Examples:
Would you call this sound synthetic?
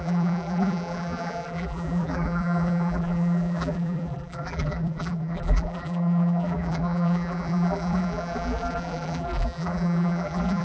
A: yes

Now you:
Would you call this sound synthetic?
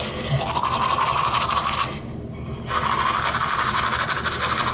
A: no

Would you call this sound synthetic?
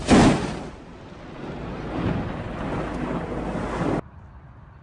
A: no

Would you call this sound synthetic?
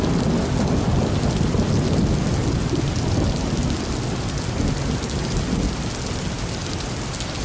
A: no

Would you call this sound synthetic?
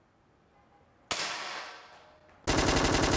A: no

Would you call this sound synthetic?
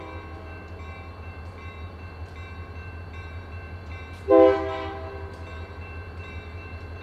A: no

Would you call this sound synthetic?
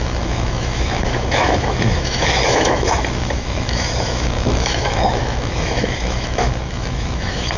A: yes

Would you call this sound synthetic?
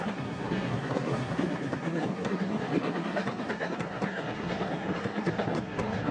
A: yes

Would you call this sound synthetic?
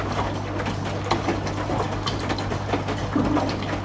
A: no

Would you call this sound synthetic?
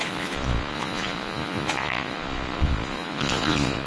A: yes